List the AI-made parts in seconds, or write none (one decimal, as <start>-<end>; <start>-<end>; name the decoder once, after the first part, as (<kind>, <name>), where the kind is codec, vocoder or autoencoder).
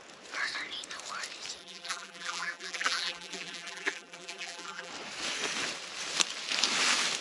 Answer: 1.6-4.9 (vocoder, BigVGAN v2)